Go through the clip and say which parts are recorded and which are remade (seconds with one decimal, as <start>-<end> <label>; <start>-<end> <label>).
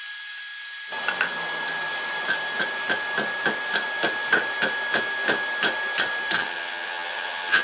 0.0-6.4 recorded; 6.4-7.6 remade